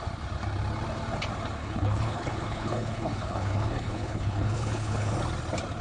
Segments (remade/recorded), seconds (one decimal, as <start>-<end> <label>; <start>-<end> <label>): 0.0-1.6 recorded; 1.6-5.1 remade; 5.1-5.8 recorded